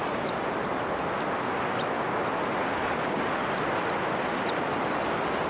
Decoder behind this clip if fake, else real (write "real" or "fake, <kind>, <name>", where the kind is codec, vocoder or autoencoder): real